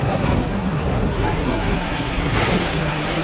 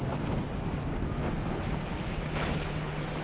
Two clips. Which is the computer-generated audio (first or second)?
first